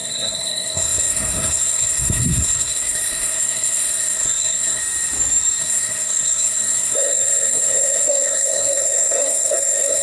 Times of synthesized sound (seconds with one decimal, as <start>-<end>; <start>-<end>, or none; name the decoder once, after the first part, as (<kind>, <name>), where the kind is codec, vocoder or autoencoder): 0.0-4.8 (codec, SNAC); 5.6-10.0

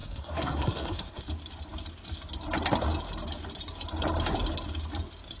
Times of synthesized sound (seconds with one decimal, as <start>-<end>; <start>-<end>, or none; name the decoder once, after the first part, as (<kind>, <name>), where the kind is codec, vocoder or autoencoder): 0.0-1.2 (codec, SNAC)

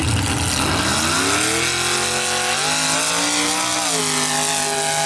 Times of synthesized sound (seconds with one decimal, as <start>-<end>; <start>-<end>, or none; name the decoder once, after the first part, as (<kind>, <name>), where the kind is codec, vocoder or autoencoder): none

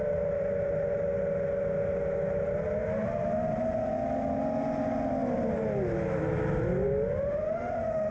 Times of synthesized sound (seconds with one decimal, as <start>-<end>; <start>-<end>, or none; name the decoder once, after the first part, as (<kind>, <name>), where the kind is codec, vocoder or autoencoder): none

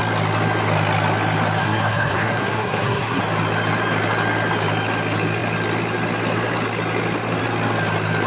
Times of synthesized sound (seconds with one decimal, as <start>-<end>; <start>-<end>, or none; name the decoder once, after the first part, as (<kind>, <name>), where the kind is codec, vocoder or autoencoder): 1.6-3.2 (codec, SNAC)